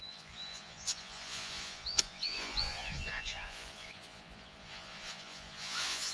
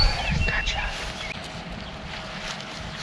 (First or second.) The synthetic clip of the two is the first